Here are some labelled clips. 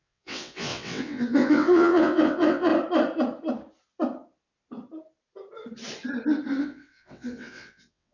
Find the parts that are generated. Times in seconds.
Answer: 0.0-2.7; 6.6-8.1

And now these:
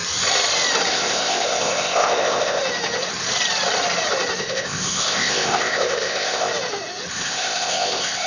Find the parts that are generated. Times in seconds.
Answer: 0.9-2.6; 4.4-6.5; 7.1-8.3

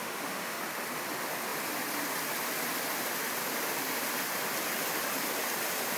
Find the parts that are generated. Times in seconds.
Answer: 0.0-0.6